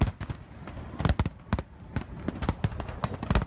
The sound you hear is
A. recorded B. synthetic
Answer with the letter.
A